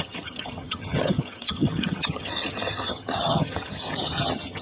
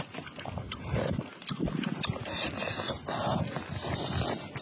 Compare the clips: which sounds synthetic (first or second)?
first